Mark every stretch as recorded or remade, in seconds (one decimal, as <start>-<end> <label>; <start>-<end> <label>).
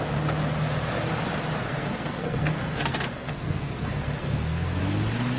0.0-1.6 recorded; 1.6-4.8 remade; 4.8-5.4 recorded